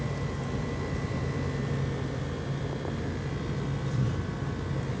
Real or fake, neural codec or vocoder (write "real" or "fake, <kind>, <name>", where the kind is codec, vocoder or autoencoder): real